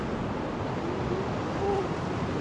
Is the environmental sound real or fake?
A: real